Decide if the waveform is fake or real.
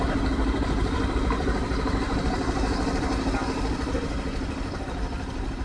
fake